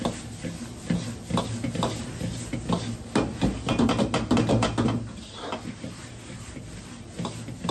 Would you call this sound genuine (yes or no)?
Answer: yes